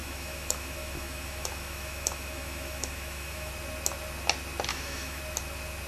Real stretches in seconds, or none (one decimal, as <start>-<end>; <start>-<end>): 3.5-4.7; 5.2-5.9